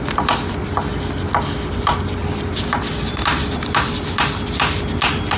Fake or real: real